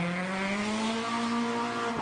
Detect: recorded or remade recorded